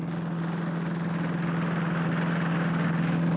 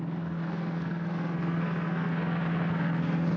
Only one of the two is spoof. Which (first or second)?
second